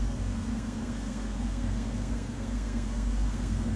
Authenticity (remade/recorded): remade